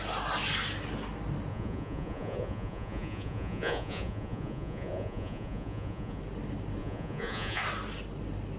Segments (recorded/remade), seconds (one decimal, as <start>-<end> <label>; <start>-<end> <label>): 0.0-1.5 recorded; 1.5-6.2 remade; 6.2-6.8 recorded; 6.8-7.6 remade; 7.6-8.6 recorded

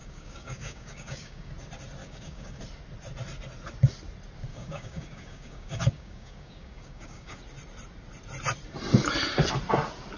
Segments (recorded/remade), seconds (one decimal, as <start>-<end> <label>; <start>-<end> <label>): 0.0-1.5 remade; 1.5-2.0 recorded; 2.0-2.6 remade; 2.6-4.5 recorded; 4.5-7.4 remade; 7.4-10.2 recorded

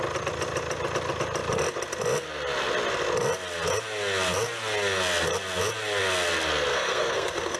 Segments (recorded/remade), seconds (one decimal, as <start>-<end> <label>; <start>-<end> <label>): 0.0-6.7 recorded; 6.7-7.6 remade

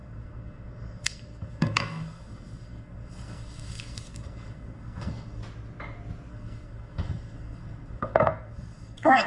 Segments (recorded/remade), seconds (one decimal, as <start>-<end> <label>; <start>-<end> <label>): 0.0-5.4 remade; 5.4-6.3 recorded; 6.3-9.3 remade

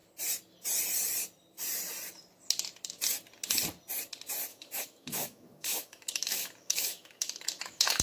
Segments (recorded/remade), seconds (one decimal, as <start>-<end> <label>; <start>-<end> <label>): 0.0-4.5 recorded; 4.5-8.0 remade

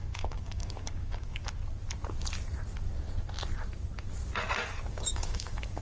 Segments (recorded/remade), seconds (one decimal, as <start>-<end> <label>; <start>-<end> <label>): 0.0-1.4 remade; 1.4-4.9 recorded; 4.9-5.8 remade